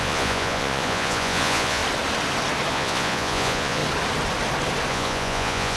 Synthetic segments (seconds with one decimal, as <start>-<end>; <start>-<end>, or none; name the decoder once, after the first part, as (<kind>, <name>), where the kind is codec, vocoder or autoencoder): 0.0-1.8 (vocoder, Vocos); 2.7-3.8; 4.9-5.8